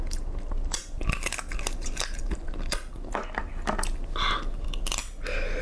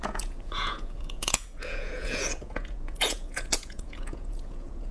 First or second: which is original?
first